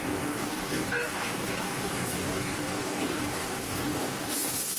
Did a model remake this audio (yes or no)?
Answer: yes